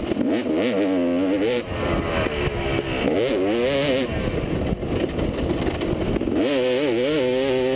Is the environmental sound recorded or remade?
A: recorded